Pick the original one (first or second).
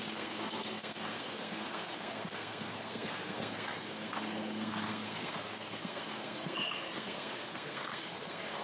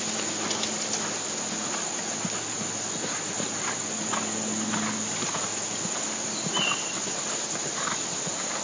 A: second